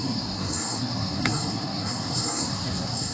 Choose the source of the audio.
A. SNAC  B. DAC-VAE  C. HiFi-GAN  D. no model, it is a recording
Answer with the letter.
A